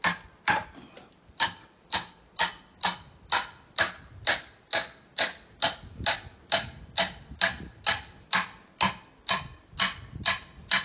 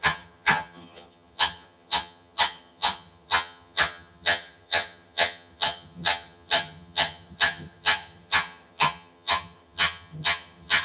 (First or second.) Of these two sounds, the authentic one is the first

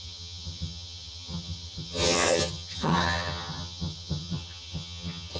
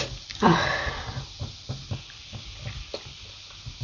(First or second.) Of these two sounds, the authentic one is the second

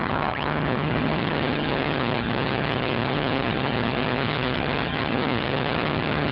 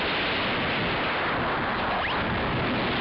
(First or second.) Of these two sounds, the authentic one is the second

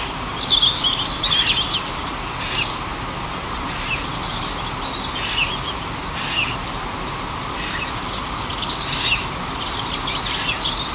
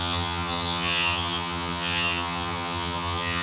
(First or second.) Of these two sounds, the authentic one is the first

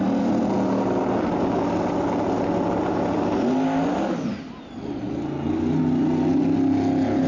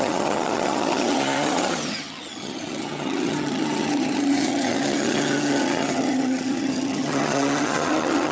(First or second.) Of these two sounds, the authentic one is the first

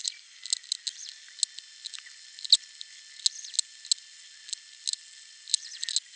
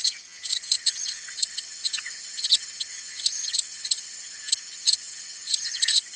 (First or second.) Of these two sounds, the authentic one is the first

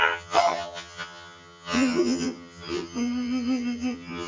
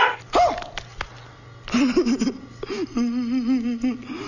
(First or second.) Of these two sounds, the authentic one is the second